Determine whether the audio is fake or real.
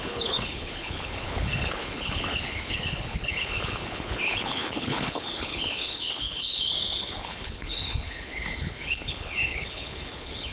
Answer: fake